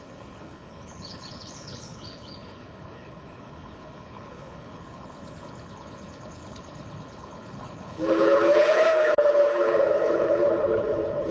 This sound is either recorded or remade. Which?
remade